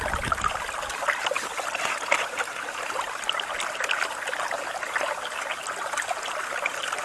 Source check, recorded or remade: recorded